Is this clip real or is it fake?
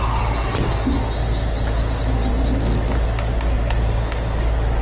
real